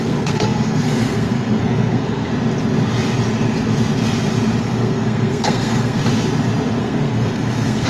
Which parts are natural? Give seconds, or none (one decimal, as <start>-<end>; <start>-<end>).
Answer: 2.3-4.6; 6.0-6.8

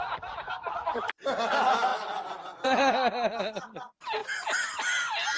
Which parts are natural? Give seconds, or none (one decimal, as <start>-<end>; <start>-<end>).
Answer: 0.0-1.9; 3.4-5.4